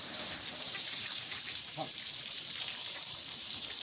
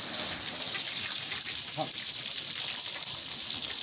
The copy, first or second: first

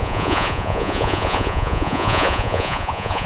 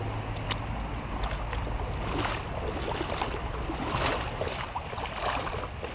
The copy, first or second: first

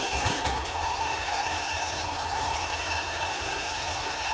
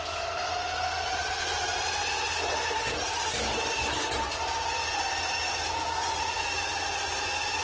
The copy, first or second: first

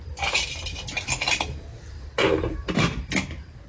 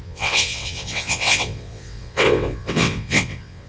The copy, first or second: second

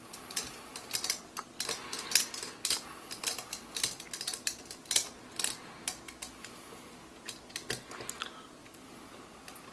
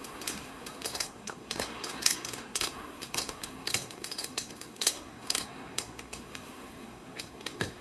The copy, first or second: second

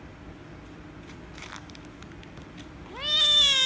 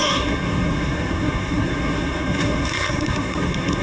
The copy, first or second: second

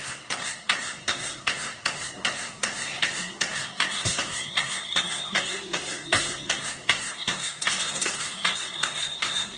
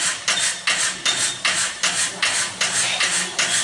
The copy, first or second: first